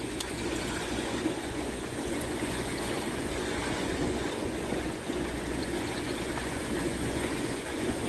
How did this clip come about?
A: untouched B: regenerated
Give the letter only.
B